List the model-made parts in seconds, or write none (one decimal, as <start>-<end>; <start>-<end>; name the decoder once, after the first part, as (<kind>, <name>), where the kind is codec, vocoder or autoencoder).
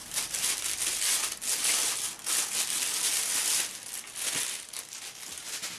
0.0-1.1 (vocoder, BigVGAN v2)